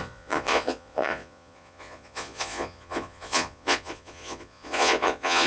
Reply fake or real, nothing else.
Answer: fake